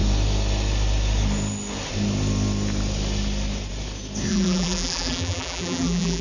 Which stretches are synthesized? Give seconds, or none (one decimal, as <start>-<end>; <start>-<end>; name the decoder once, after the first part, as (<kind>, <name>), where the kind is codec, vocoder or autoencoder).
4.3-6.2 (vocoder, BigVGAN v2)